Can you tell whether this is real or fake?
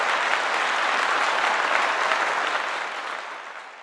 real